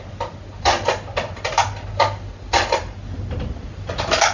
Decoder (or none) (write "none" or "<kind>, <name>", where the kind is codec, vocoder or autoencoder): none